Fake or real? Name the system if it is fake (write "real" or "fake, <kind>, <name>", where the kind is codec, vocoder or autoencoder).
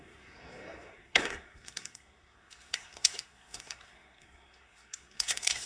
fake, codec, SNAC